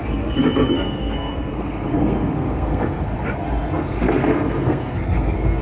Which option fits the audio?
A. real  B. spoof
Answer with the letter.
B